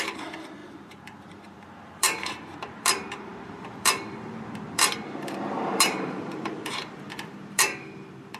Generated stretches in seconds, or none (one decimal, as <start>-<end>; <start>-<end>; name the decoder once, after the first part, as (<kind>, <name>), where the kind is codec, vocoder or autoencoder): 0.0-8.4 (vocoder, BigVGAN v2)